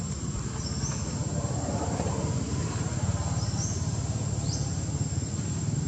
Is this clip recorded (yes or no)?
yes